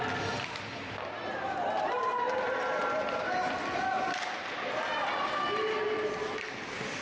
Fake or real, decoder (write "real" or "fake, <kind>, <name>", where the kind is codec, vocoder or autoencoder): real